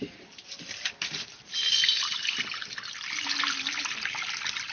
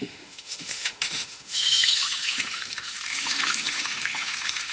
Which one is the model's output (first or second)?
second